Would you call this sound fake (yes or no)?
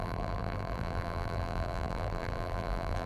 yes